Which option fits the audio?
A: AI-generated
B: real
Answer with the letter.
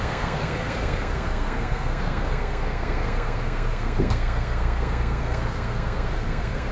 A